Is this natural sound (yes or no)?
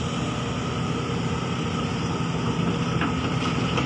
yes